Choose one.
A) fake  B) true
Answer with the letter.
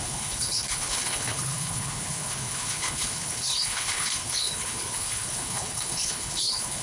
A